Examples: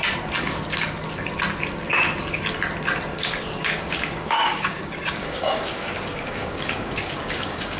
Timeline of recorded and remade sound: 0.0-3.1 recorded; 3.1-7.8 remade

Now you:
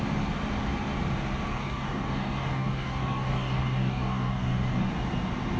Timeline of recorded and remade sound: 0.0-1.5 recorded; 1.5-4.9 remade; 4.9-5.6 recorded

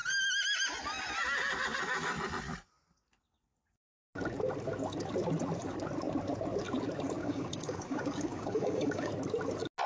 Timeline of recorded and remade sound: 0.0-7.2 recorded; 7.2-9.1 remade; 9.1-9.9 recorded

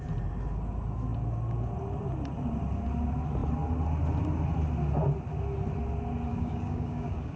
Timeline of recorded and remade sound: 0.0-6.3 recorded; 6.3-7.4 remade

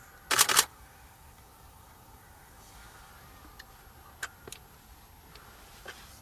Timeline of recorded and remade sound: 0.0-0.7 recorded; 0.7-3.1 remade; 3.1-6.2 recorded

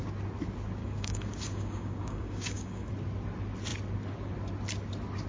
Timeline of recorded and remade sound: 0.0-0.8 recorded; 0.8-2.9 remade; 2.9-5.3 recorded

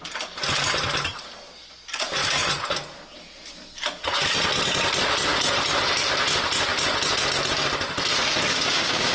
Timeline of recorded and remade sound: 0.0-8.5 recorded; 8.5-9.1 remade

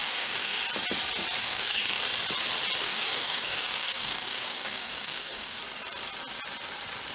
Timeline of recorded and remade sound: 0.0-0.6 remade; 0.6-1.4 recorded; 1.4-2.0 remade; 2.0-2.8 recorded; 2.8-5.6 remade; 5.6-7.1 recorded